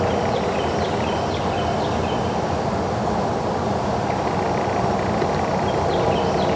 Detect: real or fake real